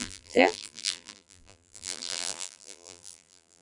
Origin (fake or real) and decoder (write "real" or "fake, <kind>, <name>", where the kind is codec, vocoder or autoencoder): fake, vocoder, BigVGAN v2